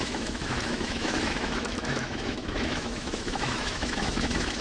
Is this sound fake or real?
fake